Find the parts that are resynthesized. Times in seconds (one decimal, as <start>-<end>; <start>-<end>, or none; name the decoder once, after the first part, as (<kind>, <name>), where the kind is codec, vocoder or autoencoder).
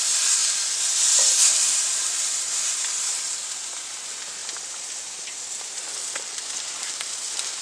4.4-5.0 (vocoder, BigVGAN v2)